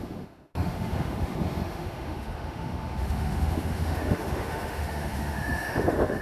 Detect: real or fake fake